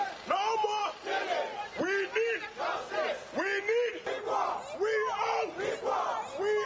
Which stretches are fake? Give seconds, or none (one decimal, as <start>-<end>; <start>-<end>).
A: none